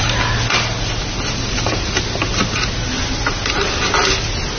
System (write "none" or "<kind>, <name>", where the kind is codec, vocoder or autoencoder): none